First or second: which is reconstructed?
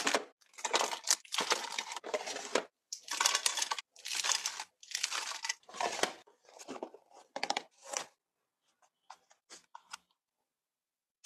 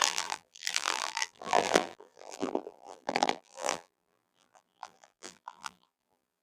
second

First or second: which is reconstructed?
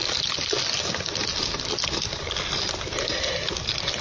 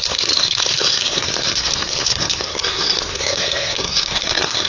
second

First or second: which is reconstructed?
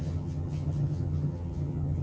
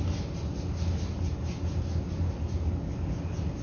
first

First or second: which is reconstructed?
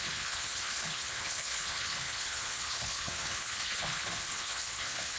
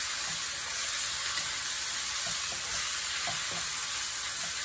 first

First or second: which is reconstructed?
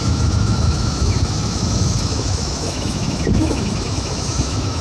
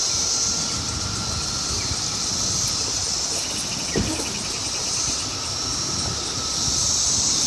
first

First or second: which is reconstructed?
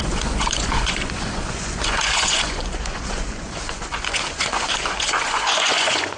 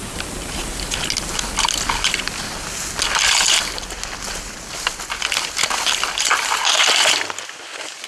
first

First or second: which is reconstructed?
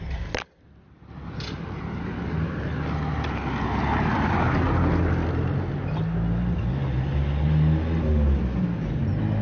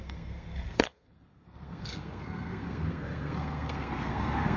second